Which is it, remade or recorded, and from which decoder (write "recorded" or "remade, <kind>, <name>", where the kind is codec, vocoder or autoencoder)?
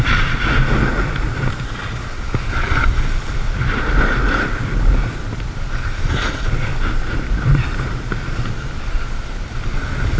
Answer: recorded